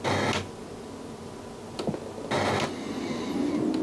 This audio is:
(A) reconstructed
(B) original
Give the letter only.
B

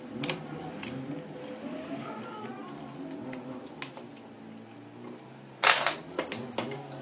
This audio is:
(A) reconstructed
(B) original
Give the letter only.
B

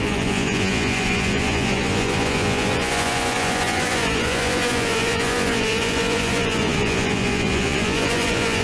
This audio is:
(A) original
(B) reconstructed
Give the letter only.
B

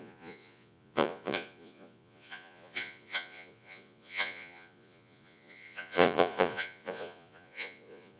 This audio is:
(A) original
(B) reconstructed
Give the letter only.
B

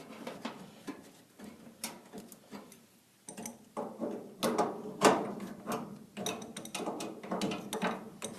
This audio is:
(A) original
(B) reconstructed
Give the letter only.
A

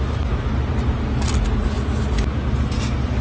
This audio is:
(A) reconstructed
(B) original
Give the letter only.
B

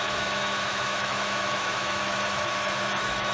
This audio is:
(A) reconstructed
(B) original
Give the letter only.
A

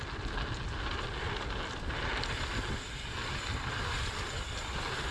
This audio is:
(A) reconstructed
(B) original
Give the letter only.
B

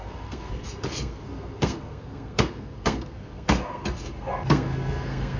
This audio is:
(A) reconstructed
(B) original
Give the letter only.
A